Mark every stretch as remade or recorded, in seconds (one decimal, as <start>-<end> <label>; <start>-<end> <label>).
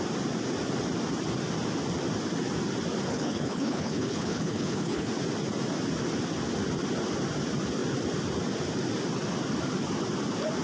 0.0-3.1 recorded; 3.1-5.1 remade; 5.1-10.6 recorded